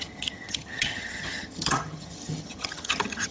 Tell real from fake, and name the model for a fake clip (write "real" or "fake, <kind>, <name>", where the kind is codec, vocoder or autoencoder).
fake, vocoder, HiFi-GAN